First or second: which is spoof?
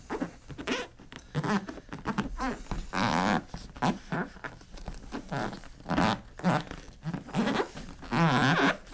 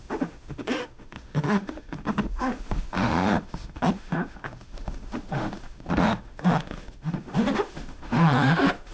second